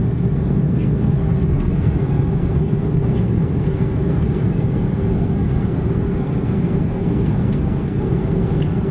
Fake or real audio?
fake